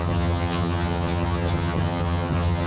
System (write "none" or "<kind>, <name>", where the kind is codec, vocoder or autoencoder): vocoder, HiFi-GAN